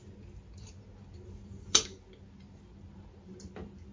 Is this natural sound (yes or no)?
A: yes